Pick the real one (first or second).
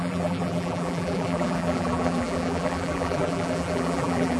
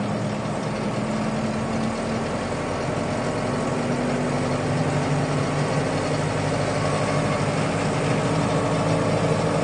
second